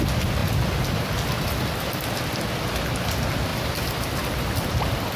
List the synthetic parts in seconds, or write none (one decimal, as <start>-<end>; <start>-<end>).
3.5-5.2